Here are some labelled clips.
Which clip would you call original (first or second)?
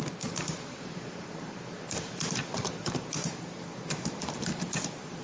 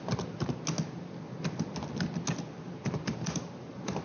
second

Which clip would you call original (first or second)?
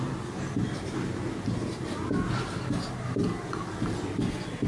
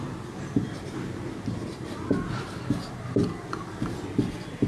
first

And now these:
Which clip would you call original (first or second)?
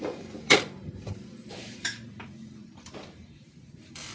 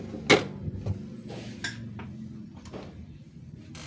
second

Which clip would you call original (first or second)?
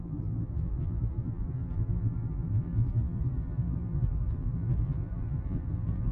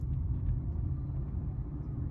second